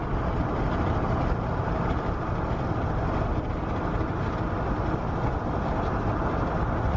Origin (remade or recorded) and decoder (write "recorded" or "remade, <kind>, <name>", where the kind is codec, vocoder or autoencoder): recorded